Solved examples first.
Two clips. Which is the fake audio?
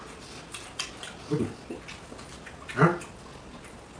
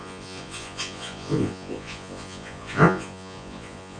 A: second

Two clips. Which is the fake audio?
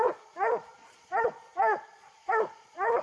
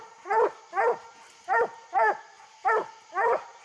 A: first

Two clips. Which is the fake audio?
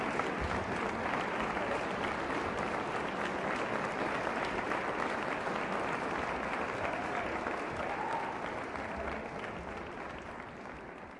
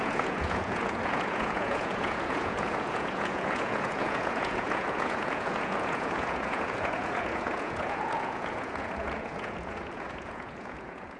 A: second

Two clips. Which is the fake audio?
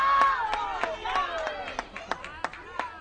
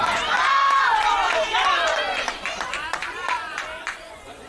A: second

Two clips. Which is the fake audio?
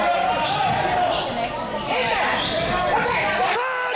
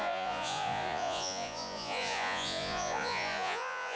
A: second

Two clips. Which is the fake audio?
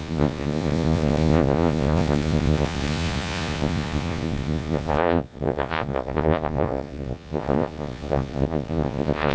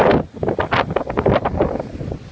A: first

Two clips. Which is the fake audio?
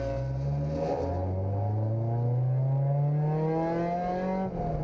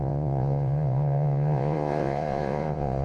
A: second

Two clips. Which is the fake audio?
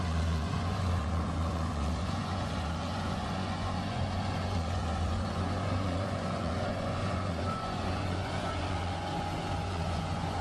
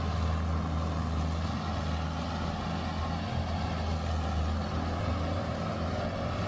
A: first